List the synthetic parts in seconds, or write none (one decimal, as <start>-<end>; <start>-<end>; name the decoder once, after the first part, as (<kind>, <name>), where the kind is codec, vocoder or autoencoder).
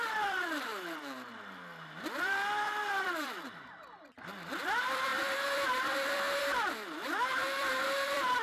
0.0-0.7 (vocoder, BigVGAN v2); 2.2-8.4